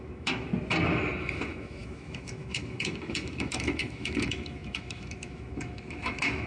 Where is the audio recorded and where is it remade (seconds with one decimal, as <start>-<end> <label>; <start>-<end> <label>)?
0.0-0.5 remade; 0.5-1.2 recorded; 1.2-6.5 remade